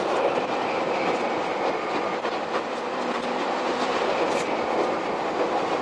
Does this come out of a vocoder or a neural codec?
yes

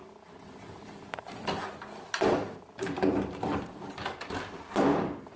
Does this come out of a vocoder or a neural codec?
yes